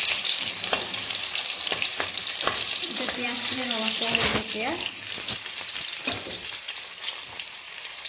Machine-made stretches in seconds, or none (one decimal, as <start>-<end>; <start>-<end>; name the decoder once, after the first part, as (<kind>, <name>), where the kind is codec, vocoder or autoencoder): 0.0-4.3 (vocoder, BigVGAN v2); 5.1-8.1